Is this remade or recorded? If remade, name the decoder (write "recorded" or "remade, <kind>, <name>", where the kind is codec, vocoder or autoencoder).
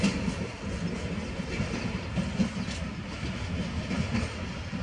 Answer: recorded